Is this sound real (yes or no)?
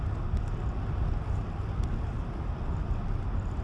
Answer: yes